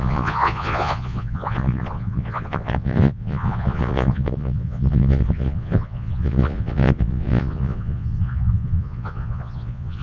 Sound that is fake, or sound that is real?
fake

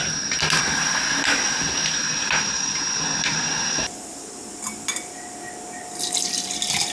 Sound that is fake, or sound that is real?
real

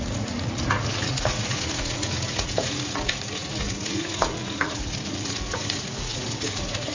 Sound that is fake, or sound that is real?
fake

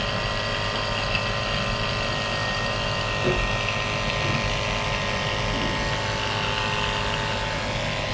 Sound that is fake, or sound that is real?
real